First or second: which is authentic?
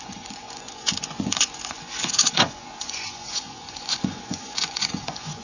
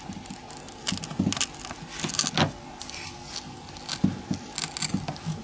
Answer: second